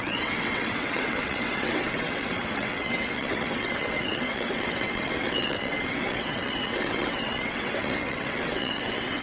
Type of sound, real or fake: fake